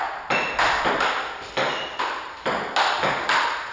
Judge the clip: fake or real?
real